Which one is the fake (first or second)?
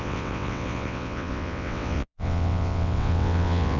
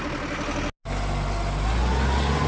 first